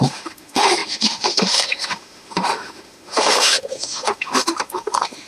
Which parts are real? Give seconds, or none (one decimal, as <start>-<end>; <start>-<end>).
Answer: none